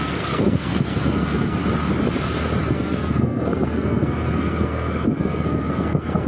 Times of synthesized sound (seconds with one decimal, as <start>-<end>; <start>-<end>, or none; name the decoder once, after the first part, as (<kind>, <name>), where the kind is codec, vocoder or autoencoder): 0.0-1.6 (codec, SNAC); 2.7-6.3